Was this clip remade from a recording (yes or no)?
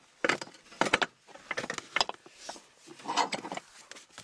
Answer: no